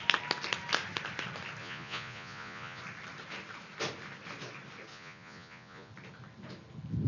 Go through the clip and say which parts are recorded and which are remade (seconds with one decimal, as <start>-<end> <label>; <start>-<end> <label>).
0.0-1.6 recorded; 1.6-2.8 remade; 2.8-4.9 recorded; 4.9-5.9 remade; 5.9-7.1 recorded